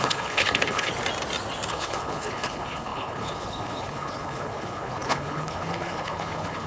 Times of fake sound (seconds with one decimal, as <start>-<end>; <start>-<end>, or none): 0.0-0.9; 1.7-6.7